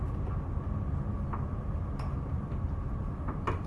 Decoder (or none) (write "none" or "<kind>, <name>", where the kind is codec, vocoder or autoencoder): none